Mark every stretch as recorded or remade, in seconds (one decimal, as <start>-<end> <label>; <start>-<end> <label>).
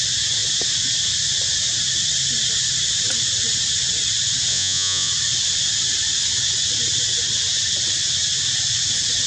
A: 0.0-4.5 recorded; 4.5-5.1 remade; 5.1-9.3 recorded